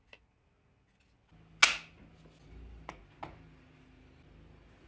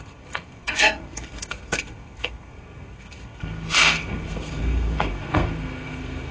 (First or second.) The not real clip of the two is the second